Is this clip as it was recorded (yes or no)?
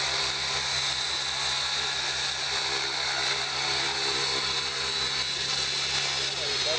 yes